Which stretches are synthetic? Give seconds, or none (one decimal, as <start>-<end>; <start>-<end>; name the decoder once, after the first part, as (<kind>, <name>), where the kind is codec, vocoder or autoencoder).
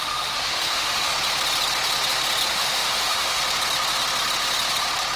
0.0-1.1 (autoencoder, DAC-VAE); 2.5-3.4